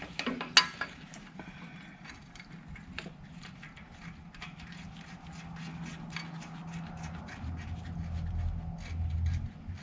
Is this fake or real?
real